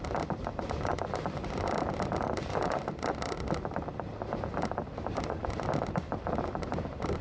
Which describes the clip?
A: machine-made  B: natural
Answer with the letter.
B